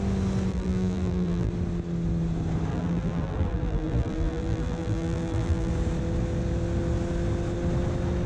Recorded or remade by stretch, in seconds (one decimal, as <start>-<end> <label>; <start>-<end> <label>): 0.0-0.5 recorded; 0.5-1.5 remade; 1.5-2.7 recorded; 2.7-5.7 remade; 5.7-8.3 recorded